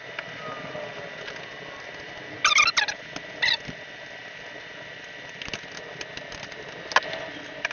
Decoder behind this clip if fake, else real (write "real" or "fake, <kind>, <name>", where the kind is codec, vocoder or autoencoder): real